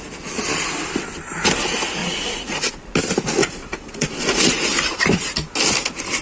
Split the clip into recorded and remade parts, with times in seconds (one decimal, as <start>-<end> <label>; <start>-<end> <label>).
0.0-2.0 recorded; 2.0-2.9 remade; 2.9-3.4 recorded; 3.4-4.6 remade; 4.6-6.2 recorded